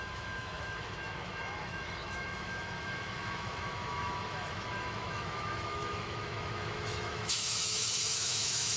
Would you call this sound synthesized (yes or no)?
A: yes